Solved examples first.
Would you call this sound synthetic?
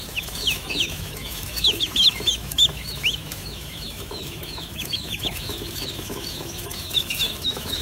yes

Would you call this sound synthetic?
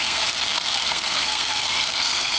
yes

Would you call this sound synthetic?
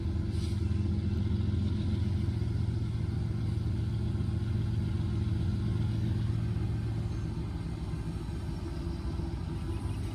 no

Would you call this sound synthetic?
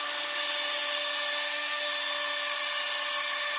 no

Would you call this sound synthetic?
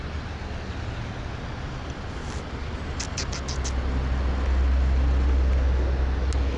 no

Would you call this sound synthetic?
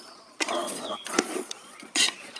yes